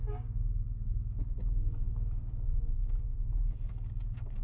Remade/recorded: remade